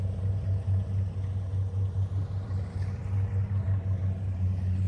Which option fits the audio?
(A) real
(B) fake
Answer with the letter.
A